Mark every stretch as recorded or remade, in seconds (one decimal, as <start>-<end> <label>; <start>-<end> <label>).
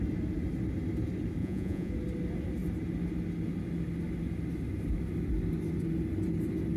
0.0-1.4 recorded; 1.4-1.9 remade; 1.9-6.8 recorded